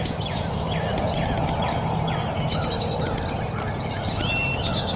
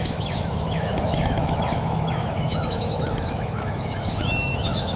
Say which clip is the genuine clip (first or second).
first